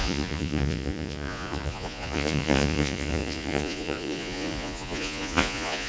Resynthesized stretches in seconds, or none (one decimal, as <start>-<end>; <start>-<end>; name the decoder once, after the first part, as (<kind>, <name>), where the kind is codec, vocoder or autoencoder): 0.0-5.9 (vocoder, Vocos)